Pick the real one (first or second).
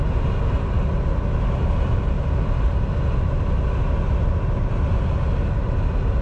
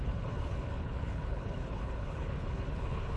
first